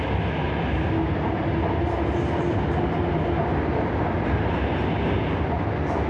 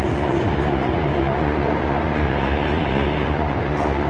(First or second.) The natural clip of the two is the first